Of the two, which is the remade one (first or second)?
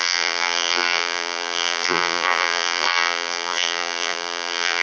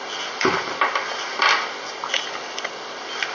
first